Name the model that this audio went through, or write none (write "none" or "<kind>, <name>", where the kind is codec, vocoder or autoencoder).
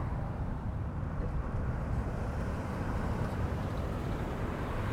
vocoder, BigVGAN v2